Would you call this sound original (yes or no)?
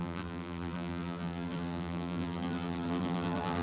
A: no